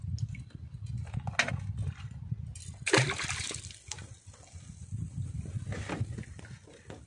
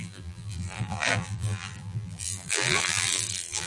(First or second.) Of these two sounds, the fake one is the second